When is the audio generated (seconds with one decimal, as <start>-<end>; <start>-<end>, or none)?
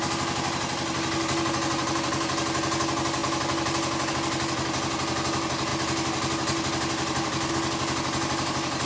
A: none